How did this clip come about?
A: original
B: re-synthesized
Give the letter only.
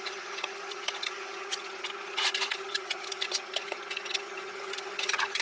B